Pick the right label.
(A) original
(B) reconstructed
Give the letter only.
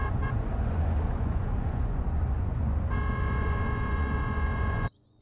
B